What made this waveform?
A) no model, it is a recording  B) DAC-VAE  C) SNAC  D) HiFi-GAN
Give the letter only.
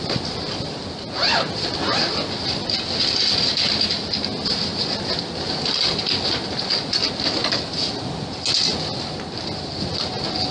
A